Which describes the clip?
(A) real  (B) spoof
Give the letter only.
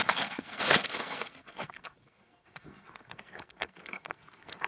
B